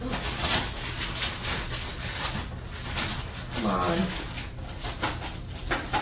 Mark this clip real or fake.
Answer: real